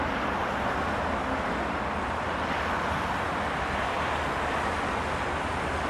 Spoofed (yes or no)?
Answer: no